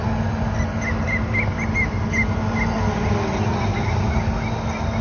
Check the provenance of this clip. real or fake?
real